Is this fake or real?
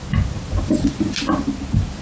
real